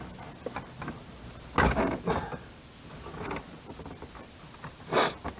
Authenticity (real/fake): real